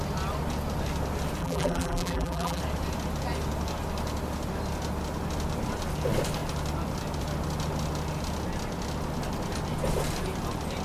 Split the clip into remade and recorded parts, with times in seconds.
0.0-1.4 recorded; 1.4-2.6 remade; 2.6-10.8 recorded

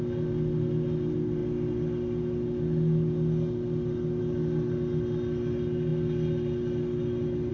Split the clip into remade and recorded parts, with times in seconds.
0.0-7.5 recorded

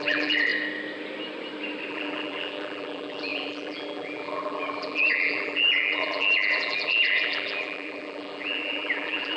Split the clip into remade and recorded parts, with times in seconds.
0.0-0.5 remade; 0.5-1.9 recorded; 1.9-9.4 remade

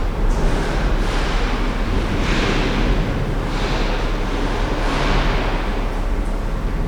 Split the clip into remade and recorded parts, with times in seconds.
0.0-2.4 remade; 2.4-6.9 recorded

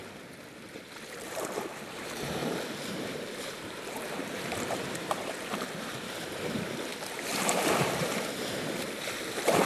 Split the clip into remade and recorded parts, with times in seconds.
0.0-2.4 remade; 2.4-3.1 recorded; 3.1-9.7 remade

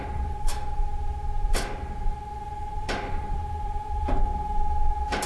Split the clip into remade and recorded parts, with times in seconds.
0.0-0.5 remade; 0.5-2.3 recorded; 2.3-4.3 remade; 4.3-5.3 recorded